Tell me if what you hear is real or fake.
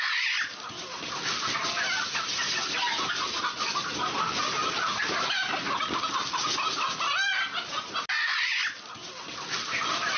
real